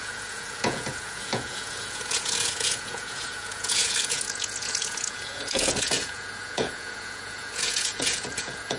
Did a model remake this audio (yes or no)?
yes